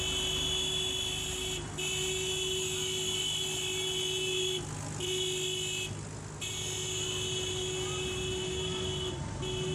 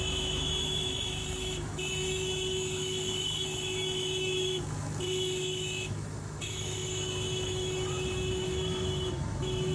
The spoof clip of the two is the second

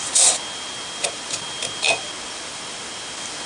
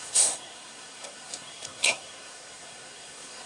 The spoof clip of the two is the second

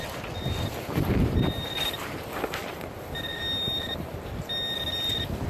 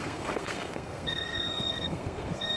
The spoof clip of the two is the second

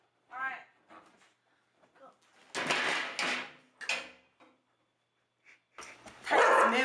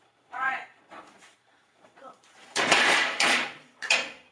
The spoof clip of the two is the second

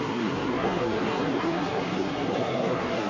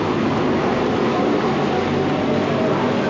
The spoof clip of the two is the first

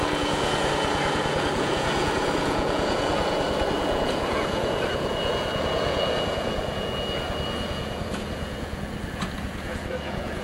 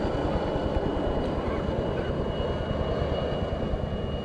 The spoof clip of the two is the first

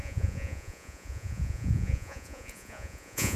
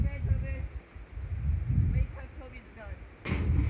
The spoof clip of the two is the first